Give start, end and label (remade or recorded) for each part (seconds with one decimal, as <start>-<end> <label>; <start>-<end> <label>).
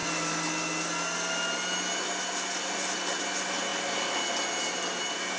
0.0-5.4 recorded